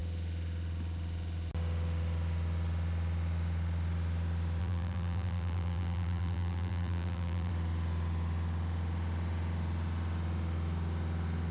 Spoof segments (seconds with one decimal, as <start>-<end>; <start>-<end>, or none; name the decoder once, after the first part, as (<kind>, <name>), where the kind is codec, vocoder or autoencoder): 4.6-7.5 (vocoder, BigVGAN v2)